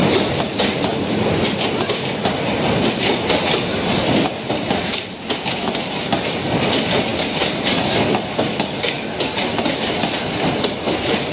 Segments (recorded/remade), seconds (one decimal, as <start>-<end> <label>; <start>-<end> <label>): 0.0-11.3 recorded